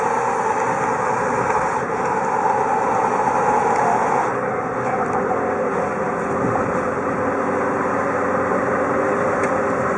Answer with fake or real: real